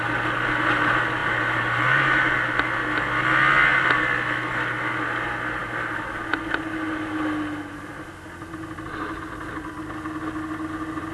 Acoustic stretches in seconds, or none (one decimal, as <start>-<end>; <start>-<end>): 0.0-1.2; 2.3-11.1